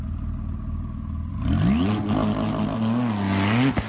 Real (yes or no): yes